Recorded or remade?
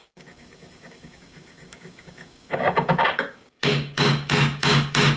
remade